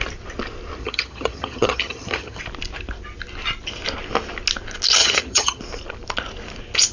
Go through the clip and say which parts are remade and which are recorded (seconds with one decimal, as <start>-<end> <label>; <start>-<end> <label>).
0.0-0.8 recorded; 0.8-2.4 remade; 2.4-5.0 recorded; 5.0-5.6 remade; 5.6-6.9 recorded